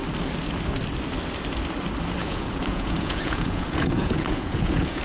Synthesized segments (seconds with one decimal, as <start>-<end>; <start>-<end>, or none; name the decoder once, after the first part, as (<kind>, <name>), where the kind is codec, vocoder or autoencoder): 2.2-5.0 (vocoder, Vocos)